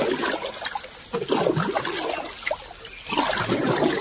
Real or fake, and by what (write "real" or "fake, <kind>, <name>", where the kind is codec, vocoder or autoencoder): real